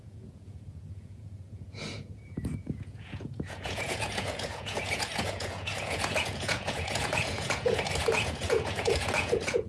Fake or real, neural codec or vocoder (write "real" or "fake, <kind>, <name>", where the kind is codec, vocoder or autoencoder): fake, vocoder, Vocos